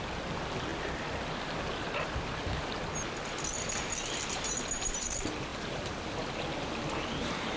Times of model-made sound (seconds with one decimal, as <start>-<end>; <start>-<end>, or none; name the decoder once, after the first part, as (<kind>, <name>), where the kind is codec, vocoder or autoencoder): 5.5-6.0 (vocoder, BigVGAN v2)